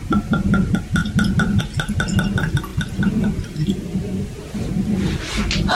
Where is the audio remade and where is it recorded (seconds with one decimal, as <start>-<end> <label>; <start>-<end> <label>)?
0.0-1.0 recorded; 1.0-1.6 remade; 1.6-2.7 recorded; 2.7-4.6 remade; 4.6-5.7 recorded

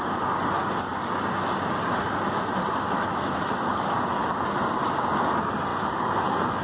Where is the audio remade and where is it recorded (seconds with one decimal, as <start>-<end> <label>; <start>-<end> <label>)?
0.0-5.7 recorded; 5.7-6.6 remade